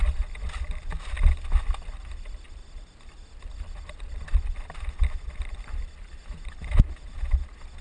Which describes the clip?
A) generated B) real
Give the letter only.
B